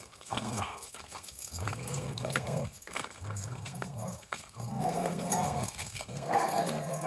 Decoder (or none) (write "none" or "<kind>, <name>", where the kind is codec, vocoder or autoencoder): codec, SNAC